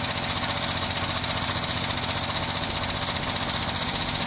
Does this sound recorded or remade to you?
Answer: recorded